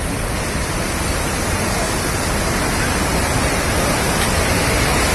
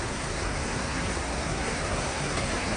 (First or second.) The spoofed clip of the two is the second